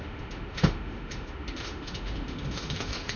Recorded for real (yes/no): no